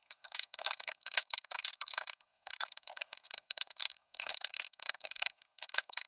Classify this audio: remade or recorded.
remade